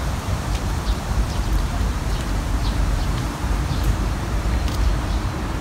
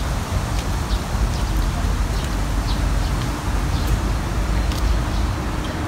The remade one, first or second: first